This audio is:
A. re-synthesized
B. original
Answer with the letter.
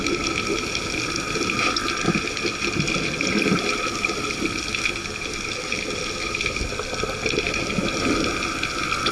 B